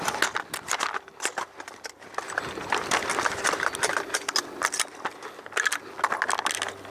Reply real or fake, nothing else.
real